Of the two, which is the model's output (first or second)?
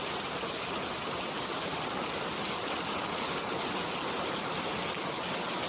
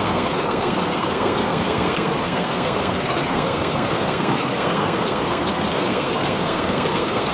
second